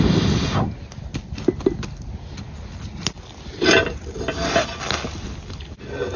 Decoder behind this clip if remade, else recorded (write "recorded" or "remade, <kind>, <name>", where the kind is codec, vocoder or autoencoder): recorded